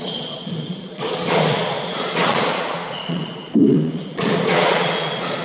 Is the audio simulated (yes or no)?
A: yes